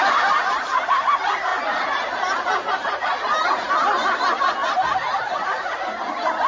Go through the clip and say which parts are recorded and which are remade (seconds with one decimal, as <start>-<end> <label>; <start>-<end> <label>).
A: 0.0-6.5 recorded